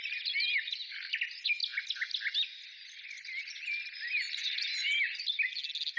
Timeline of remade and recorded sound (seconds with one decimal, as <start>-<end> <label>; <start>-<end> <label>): 0.0-1.7 recorded; 1.7-5.3 remade; 5.3-6.0 recorded